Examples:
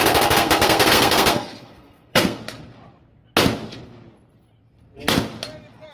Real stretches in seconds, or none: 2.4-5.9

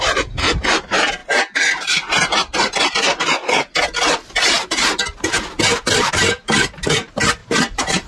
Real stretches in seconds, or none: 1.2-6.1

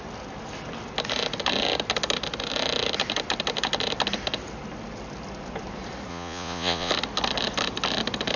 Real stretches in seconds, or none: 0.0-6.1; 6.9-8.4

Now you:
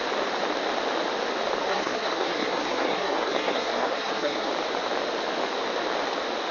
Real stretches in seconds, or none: 0.0-1.7; 4.5-6.5

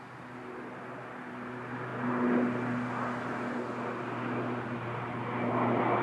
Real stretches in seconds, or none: 0.0-6.0